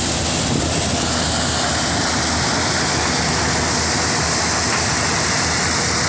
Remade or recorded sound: recorded